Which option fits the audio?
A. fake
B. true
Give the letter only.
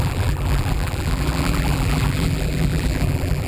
A